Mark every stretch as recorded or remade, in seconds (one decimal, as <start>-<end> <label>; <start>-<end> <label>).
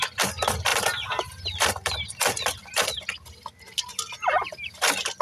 0.0-5.2 recorded